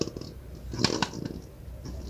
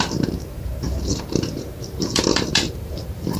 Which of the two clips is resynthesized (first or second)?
second